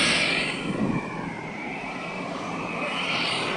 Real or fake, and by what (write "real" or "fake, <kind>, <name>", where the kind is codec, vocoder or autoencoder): fake, vocoder, BigVGAN v2